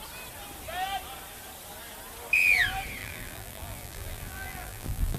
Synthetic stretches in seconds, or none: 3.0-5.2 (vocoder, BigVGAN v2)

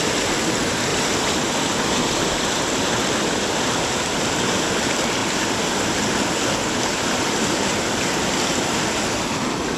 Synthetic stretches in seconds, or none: 0.9-4.7 (vocoder, BigVGAN v2); 5.2-8.0

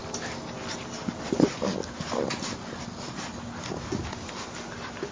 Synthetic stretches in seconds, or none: none

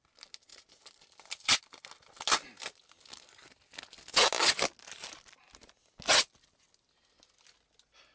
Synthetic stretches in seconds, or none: 0.5-1.6 (vocoder, BigVGAN v2)

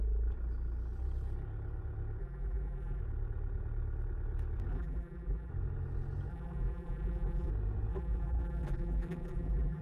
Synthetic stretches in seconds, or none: 2.2-3.0 (vocoder, BigVGAN v2); 4.7-5.5; 6.3-7.5; 7.9-9.8

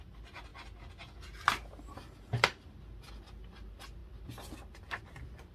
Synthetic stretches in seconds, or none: none

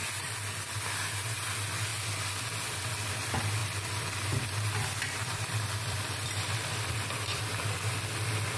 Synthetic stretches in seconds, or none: 3.6-7.4 (vocoder, BigVGAN v2)

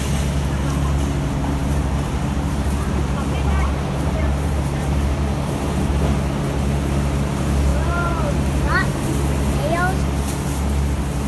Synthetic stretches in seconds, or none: 1.6-5.9 (vocoder, BigVGAN v2); 7.7-9.1